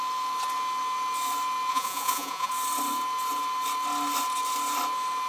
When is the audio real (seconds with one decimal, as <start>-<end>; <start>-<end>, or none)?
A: 0.0-1.7; 2.5-5.3